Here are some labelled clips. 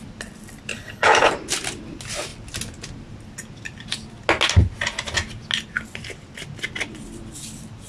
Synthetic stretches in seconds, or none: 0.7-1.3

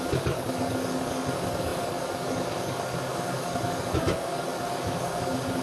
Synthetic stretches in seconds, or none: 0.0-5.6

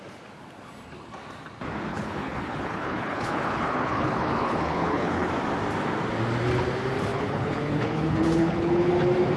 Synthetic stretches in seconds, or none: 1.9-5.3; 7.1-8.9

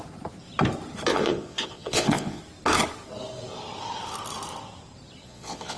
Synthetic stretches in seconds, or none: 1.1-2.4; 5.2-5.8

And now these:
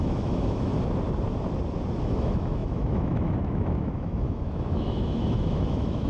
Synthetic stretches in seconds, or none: 0.0-0.7; 2.0-6.1

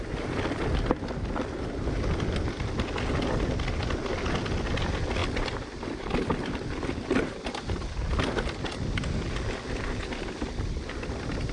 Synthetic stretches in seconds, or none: none